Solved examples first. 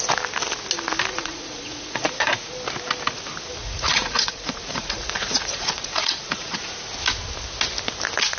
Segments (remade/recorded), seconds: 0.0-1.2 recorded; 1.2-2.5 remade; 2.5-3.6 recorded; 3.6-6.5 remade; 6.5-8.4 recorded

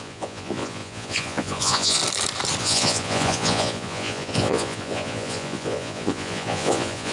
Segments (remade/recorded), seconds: 0.0-2.0 remade; 2.0-2.6 recorded; 2.6-7.1 remade

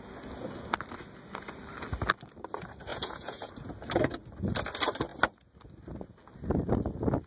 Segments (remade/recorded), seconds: 0.0-2.9 recorded; 2.9-3.5 remade; 3.5-7.3 recorded

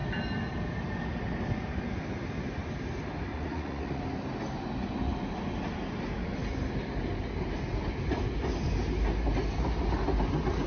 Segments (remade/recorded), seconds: 0.0-3.3 recorded; 3.3-4.0 remade; 4.0-10.7 recorded